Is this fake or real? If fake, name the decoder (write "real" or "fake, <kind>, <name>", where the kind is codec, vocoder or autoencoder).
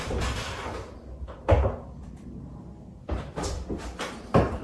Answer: real